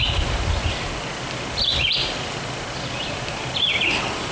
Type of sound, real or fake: real